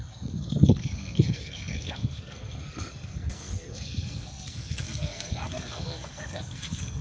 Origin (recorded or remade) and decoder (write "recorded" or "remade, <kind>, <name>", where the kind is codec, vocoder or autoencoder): remade, codec, SNAC